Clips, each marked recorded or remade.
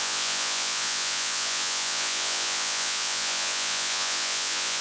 remade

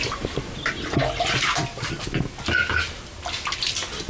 recorded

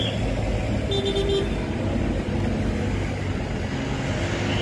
recorded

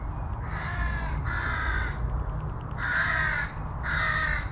recorded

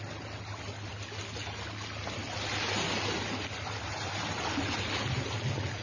recorded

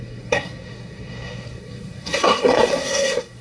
remade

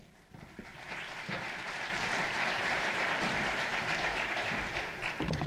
remade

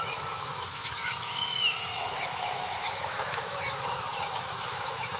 remade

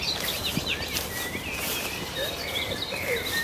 remade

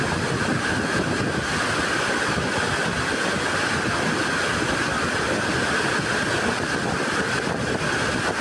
recorded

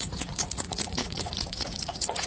remade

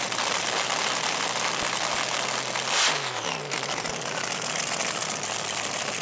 recorded